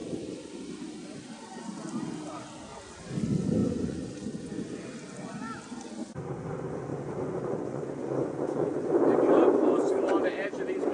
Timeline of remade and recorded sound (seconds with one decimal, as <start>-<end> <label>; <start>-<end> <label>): 0.0-3.6 recorded; 3.6-4.6 remade; 4.6-6.9 recorded; 6.9-8.9 remade; 8.9-10.9 recorded